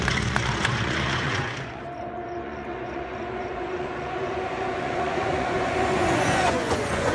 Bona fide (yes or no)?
no